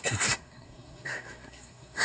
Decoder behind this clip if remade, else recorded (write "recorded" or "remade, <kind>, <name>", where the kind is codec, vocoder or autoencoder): remade, codec, SNAC